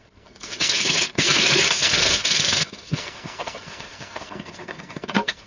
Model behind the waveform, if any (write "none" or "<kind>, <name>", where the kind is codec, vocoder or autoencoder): codec, SNAC